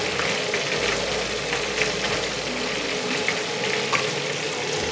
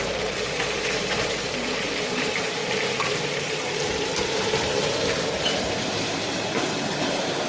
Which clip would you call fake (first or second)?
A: second